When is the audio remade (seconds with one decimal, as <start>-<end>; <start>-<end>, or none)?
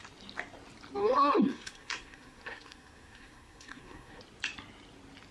1.0-4.2